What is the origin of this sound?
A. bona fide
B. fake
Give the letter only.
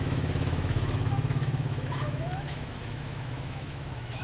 B